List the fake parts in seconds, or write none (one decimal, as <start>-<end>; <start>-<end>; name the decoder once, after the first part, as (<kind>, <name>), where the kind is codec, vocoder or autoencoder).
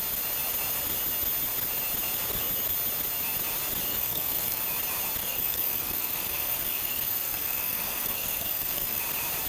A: 3.9-4.6 (codec, SNAC); 5.2-9.0